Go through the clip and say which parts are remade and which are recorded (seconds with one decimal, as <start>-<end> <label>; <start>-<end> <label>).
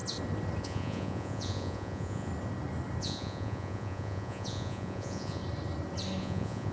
0.0-0.6 recorded; 0.6-2.3 remade; 2.3-3.0 recorded; 3.0-5.4 remade; 5.4-6.2 recorded; 6.2-6.7 remade